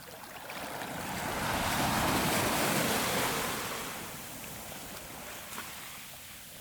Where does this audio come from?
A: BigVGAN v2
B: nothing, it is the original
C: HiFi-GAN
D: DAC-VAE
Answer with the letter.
B